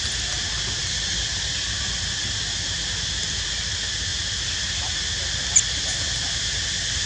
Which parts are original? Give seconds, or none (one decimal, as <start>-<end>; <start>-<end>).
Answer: 0.0-4.1; 6.1-7.1